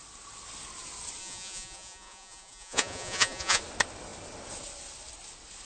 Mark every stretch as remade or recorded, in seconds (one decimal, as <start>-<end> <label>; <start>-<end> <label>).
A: 0.0-1.2 recorded; 1.2-3.6 remade; 3.6-5.6 recorded